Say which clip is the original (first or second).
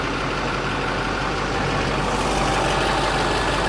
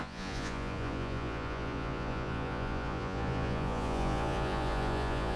first